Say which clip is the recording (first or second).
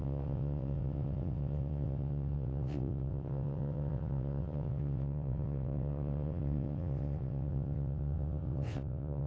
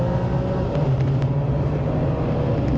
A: second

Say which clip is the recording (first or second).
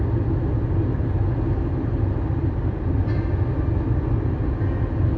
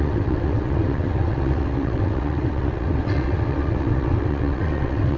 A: first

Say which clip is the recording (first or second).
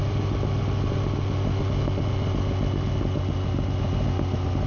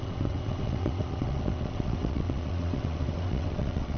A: first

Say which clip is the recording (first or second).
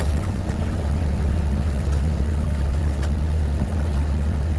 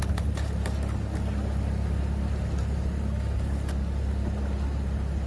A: second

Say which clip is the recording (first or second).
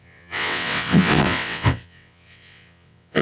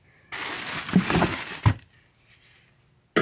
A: second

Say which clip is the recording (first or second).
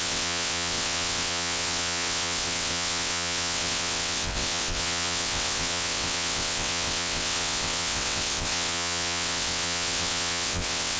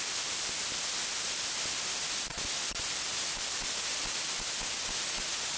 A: second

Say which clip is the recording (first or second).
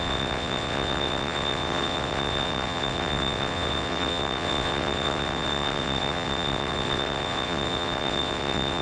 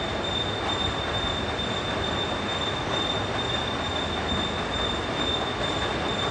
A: second